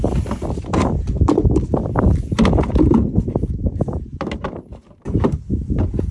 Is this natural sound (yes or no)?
yes